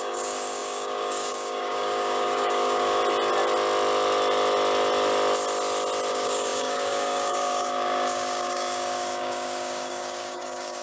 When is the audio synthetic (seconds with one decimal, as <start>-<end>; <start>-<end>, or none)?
0.0-3.0; 6.1-10.8